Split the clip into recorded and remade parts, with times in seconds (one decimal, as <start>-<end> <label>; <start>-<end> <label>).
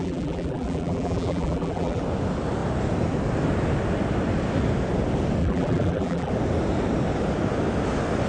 0.0-2.0 remade; 2.0-5.4 recorded; 5.4-6.3 remade; 6.3-8.3 recorded